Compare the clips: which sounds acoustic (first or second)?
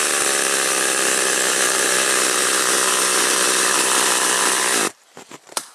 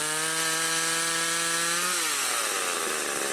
second